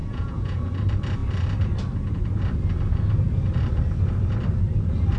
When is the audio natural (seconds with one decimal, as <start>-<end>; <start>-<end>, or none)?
0.7-5.2